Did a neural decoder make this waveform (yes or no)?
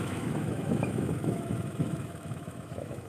yes